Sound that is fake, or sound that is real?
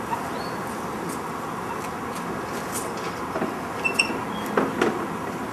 real